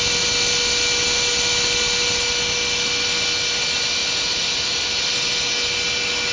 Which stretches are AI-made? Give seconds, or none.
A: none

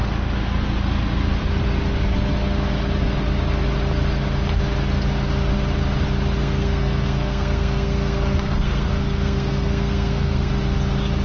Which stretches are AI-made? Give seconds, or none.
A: 6.4-10.5 (codec, SNAC)

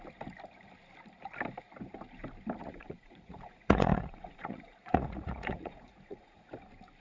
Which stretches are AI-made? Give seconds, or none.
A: 2.6-6.5 (vocoder, Vocos)